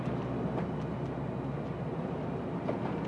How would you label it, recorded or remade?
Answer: recorded